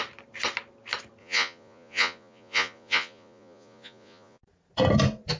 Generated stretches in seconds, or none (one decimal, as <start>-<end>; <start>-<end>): 1.2-4.4